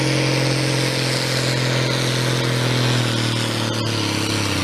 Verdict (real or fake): real